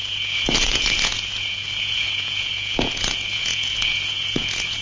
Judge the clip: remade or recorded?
remade